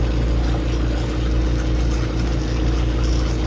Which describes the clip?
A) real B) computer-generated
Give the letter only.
A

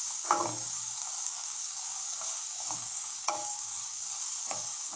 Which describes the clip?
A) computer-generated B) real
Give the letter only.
A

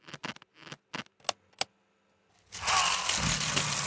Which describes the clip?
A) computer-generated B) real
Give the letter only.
B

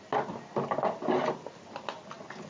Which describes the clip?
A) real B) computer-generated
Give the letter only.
A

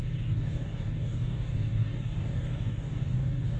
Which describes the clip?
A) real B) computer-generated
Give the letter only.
B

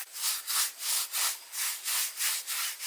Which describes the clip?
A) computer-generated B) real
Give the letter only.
B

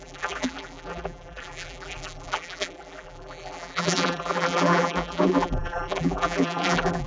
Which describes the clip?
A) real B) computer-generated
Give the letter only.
B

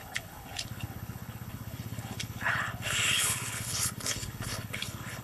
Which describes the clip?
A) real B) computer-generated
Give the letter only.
B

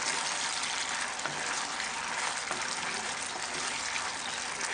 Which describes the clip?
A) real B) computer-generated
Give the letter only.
A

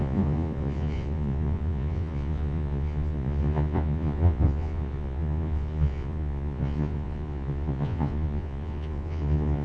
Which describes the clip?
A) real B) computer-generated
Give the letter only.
B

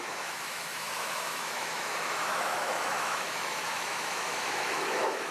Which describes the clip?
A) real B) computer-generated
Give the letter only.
B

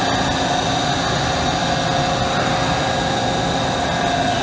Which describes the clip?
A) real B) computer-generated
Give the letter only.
A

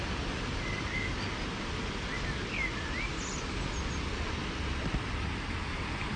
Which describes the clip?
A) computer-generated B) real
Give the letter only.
B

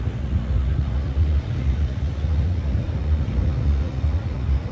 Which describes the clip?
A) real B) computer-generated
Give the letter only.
B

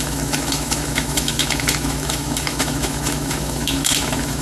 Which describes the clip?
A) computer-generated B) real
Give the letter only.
A